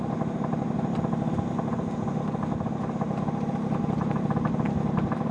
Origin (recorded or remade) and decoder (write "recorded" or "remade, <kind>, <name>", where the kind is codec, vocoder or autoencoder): recorded